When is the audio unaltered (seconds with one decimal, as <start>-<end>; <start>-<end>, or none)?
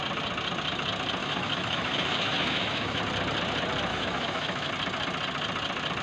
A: 0.0-1.2; 3.0-3.9; 4.7-6.0